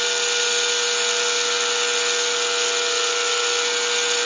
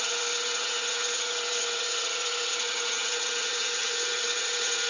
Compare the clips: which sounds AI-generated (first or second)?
second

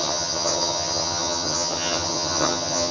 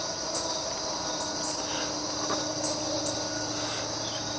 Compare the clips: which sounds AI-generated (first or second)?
first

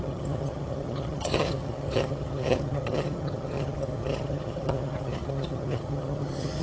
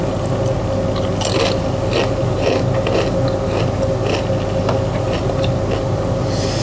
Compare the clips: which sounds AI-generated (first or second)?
first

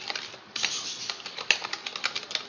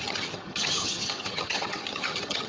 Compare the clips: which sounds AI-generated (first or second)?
second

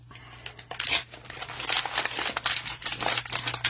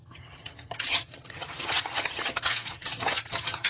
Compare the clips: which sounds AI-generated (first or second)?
second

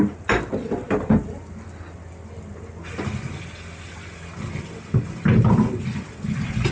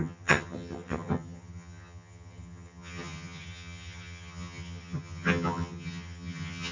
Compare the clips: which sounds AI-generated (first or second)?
second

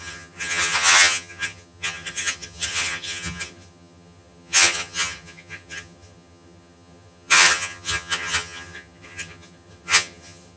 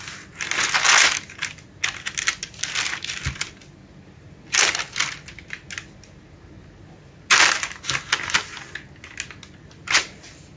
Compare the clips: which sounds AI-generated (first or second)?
first